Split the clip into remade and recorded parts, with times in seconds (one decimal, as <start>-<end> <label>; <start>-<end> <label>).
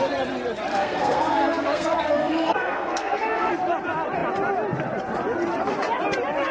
0.0-0.7 recorded; 0.7-3.5 remade; 3.5-6.5 recorded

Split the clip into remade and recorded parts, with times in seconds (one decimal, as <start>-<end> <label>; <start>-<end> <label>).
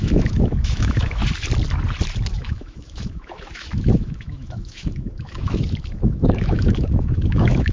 0.0-1.2 remade; 1.2-2.3 recorded; 2.3-7.7 remade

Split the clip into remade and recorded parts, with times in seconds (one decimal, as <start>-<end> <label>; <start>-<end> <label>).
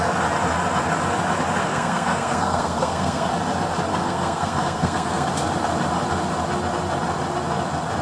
0.0-1.6 recorded; 1.6-3.3 remade; 3.3-3.9 recorded; 3.9-5.3 remade; 5.3-8.0 recorded